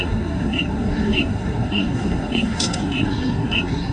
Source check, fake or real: fake